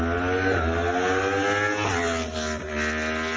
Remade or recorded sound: recorded